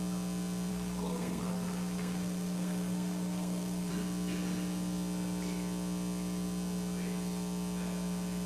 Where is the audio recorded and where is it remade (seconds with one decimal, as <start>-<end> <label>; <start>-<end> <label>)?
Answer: 0.0-0.7 recorded; 0.7-3.9 remade; 3.9-8.5 recorded